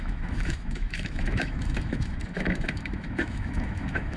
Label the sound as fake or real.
fake